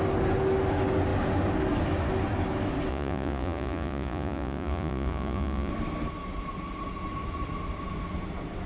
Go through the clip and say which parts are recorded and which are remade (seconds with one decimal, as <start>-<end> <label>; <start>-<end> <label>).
0.0-2.9 recorded; 2.9-5.7 remade; 5.7-8.7 recorded